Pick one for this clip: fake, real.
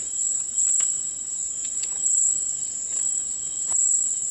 fake